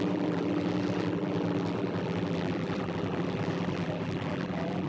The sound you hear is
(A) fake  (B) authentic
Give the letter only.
A